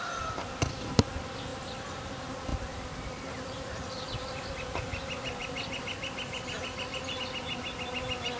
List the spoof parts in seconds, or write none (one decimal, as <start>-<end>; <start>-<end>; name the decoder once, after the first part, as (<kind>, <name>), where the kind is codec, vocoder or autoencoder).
1.5-2.1 (vocoder, BigVGAN v2); 2.5-7.2